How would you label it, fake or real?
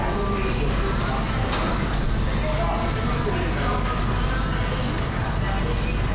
real